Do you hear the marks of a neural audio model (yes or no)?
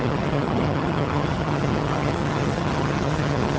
yes